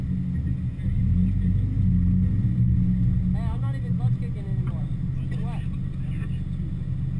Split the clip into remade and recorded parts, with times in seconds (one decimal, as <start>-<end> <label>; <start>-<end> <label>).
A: 0.0-7.2 recorded